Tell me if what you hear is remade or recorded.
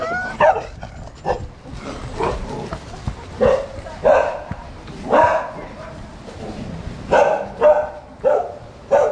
recorded